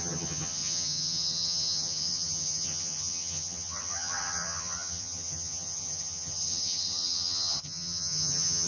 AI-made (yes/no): yes